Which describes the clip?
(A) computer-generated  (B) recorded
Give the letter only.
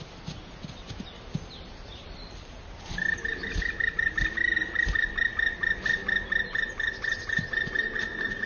B